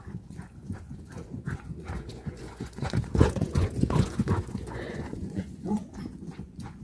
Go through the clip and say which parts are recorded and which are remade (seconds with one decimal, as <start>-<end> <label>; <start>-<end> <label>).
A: 0.0-6.8 remade